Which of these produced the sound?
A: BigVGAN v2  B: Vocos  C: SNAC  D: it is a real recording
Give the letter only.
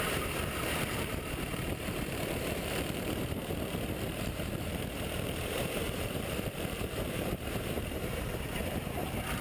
A